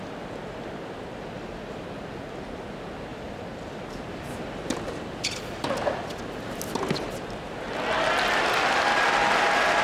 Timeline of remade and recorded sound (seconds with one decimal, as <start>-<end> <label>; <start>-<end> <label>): 0.0-3.1 recorded; 3.1-4.4 remade; 4.4-9.8 recorded